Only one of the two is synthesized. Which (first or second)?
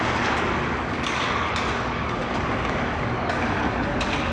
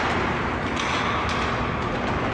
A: first